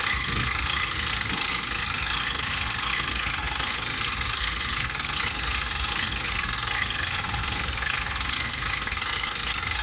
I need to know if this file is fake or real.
fake